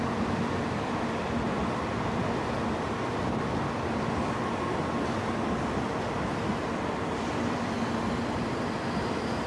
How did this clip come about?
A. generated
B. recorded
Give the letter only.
B